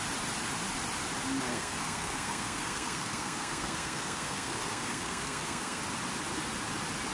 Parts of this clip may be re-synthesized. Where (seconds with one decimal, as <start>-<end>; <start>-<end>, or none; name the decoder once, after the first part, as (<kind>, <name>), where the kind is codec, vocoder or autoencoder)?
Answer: 1.5-5.8 (codec, SNAC)